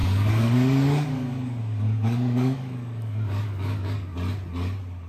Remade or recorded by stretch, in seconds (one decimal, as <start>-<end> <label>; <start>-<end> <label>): 0.0-4.1 remade; 4.1-5.1 recorded